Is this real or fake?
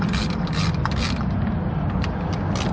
real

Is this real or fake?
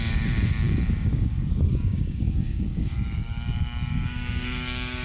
fake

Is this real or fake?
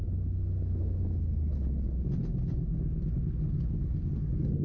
real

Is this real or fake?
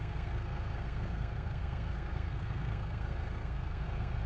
fake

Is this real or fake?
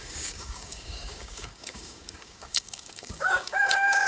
fake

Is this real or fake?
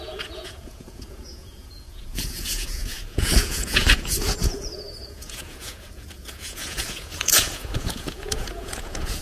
fake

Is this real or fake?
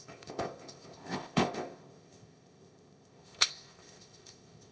fake